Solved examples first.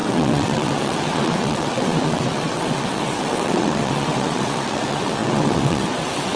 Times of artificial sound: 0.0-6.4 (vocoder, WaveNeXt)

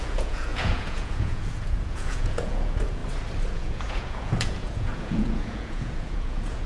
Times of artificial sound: 0.0-3.0 (vocoder, Vocos); 3.5-6.7

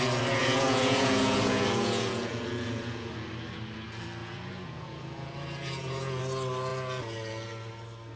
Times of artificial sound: 0.4-3.1 (vocoder, Vocos); 4.2-6.2

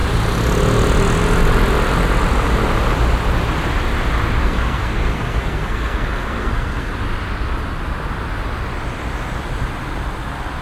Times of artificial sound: 4.4-6.9 (codec, SNAC)